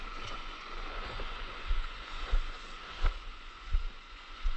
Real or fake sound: fake